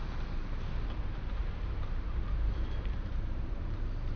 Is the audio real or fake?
fake